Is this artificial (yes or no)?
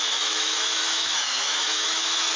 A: yes